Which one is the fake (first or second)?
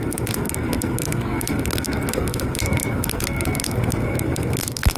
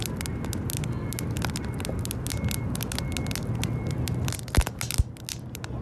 first